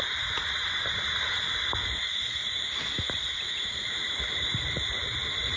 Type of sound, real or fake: fake